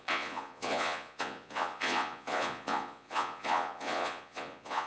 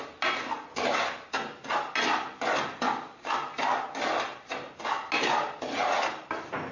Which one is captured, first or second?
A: second